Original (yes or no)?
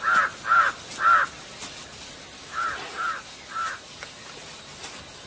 yes